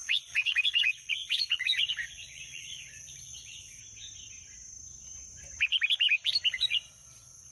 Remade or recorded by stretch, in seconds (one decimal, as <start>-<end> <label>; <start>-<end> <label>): 0.0-3.8 remade; 3.8-6.5 recorded; 6.5-7.5 remade